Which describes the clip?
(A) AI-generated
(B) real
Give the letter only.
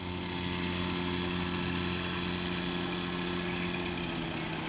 B